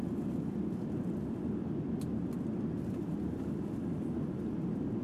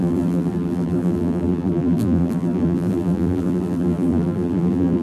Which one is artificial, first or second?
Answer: second